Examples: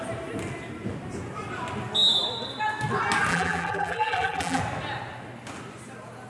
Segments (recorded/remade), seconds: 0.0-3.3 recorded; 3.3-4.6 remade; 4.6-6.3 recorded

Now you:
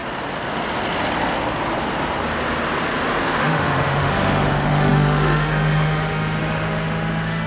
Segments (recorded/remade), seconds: 0.0-3.4 recorded; 3.4-7.5 remade

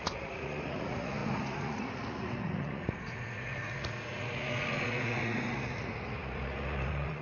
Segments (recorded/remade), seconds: 0.0-7.2 remade

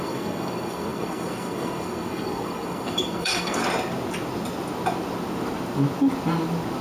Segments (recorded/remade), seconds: 0.0-3.6 remade; 3.6-6.8 recorded

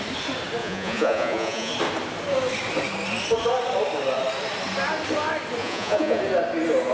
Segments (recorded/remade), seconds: 0.0-0.6 recorded; 0.6-1.7 remade; 1.7-5.6 recorded; 5.6-6.2 remade; 6.2-6.9 recorded

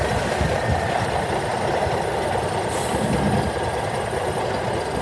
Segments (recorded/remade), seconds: 0.0-5.0 recorded